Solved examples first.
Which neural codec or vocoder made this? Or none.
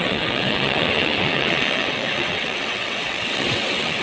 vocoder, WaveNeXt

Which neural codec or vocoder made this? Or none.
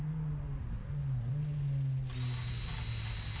none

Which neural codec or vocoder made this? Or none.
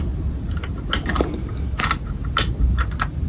none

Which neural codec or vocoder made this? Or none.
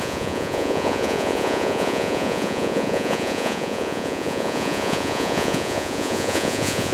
vocoder, Vocos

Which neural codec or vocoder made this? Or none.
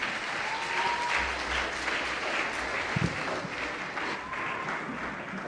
none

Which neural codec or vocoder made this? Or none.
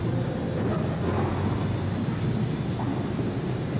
vocoder, BigVGAN v2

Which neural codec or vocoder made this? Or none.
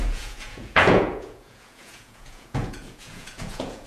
vocoder, Vocos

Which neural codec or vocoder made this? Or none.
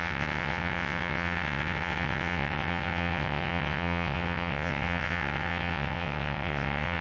vocoder, WaveNeXt